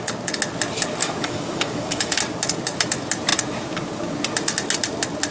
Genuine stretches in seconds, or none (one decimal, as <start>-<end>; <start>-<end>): 0.0-1.0; 2.2-5.3